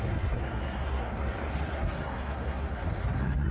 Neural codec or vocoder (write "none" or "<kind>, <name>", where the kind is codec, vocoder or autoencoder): codec, SNAC